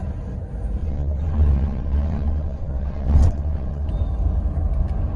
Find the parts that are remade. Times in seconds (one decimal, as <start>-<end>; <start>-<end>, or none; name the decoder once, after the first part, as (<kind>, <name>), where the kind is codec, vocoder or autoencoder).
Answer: 0.8-3.9 (vocoder, WaveNeXt)